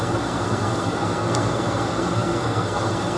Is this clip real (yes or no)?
no